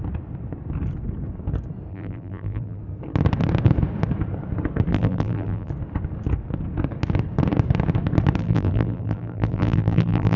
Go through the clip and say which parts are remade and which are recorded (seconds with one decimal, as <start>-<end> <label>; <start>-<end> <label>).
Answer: 0.0-1.9 recorded; 1.9-2.8 remade; 2.8-4.9 recorded; 4.9-5.7 remade; 5.7-8.4 recorded; 8.4-10.4 remade